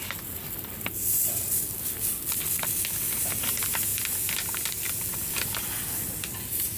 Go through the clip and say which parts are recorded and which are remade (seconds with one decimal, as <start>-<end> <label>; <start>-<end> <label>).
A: 0.0-6.8 recorded